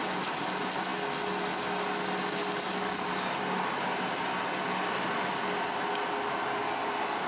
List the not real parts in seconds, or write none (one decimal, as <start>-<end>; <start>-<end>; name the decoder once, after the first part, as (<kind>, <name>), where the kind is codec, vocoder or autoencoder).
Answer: none